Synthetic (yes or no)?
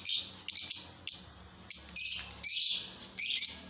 no